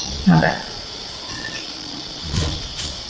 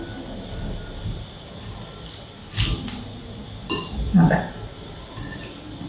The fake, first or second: first